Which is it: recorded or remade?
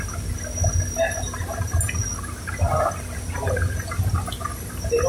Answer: recorded